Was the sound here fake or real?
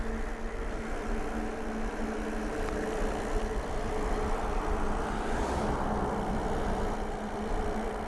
real